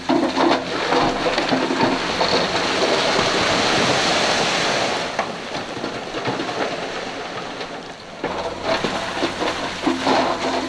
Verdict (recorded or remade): recorded